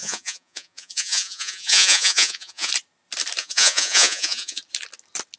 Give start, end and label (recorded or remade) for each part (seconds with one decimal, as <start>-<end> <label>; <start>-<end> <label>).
0.0-2.7 remade; 2.7-3.4 recorded; 3.4-4.6 remade; 4.6-5.4 recorded

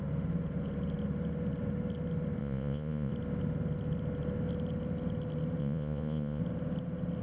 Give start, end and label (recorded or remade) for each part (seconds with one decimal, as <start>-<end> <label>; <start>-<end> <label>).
0.0-2.4 recorded; 2.4-3.1 remade; 3.1-5.6 recorded; 5.6-6.4 remade; 6.4-7.2 recorded

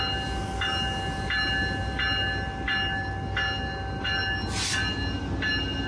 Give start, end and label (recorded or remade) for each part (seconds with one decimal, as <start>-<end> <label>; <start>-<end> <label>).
0.0-5.9 recorded